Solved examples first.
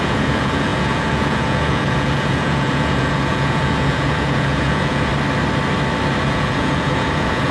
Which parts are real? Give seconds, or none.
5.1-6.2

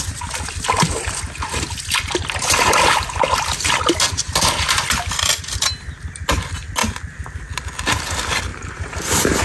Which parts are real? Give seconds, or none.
0.0-8.5

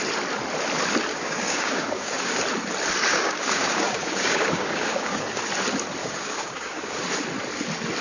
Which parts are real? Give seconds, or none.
0.0-1.1; 2.4-3.1; 5.4-6.0; 7.0-8.0

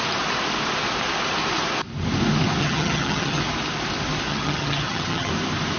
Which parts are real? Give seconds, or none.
0.0-2.6; 3.4-4.3; 5.3-5.8

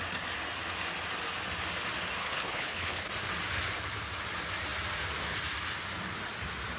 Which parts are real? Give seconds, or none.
0.0-2.2; 3.1-6.8

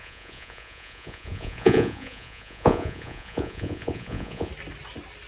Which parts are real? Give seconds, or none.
4.5-5.3